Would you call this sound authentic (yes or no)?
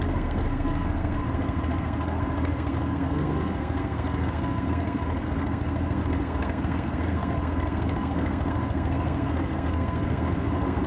no